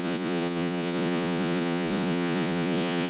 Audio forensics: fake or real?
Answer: fake